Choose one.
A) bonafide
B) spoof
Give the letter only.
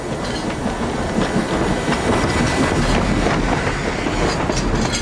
A